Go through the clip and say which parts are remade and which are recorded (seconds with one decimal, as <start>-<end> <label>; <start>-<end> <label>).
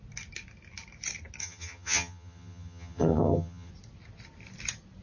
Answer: 0.0-1.4 recorded; 1.4-3.7 remade; 3.7-5.0 recorded